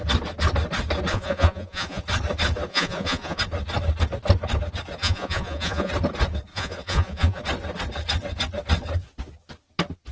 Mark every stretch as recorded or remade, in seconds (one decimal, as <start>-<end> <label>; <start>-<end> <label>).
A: 0.0-1.1 recorded; 1.1-2.0 remade; 2.0-2.7 recorded; 2.7-3.4 remade; 3.4-5.0 recorded; 5.0-5.9 remade; 5.9-6.5 recorded; 6.5-7.4 remade; 7.4-10.1 recorded